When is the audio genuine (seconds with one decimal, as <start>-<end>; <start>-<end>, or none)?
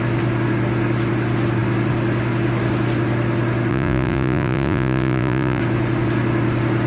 0.0-3.7; 5.6-6.9